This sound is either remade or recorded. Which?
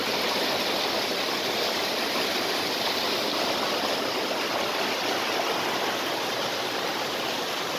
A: recorded